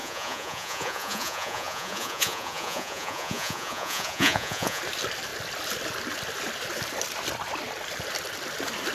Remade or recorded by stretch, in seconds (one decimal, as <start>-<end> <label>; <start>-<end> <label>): 0.0-4.8 remade; 4.8-8.9 recorded